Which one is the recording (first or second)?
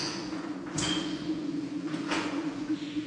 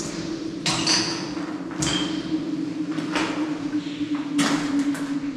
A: second